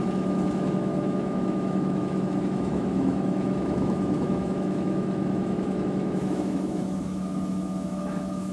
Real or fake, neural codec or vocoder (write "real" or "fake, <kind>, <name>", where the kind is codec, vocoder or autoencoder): fake, autoencoder, DAC-VAE